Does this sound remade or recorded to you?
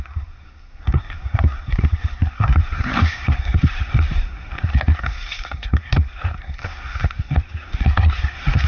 remade